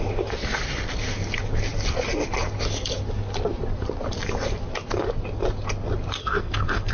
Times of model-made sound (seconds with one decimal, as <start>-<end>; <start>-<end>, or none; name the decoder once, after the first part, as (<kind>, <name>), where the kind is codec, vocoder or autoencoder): 6.2-6.9 (codec, SNAC)